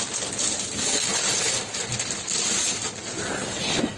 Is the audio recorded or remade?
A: recorded